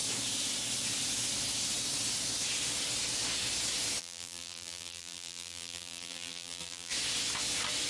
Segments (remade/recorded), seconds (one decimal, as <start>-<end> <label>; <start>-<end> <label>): 0.0-4.0 recorded; 4.0-6.9 remade; 6.9-7.9 recorded